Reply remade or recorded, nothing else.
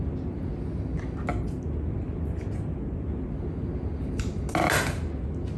recorded